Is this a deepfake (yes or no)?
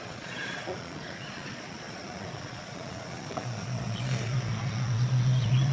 yes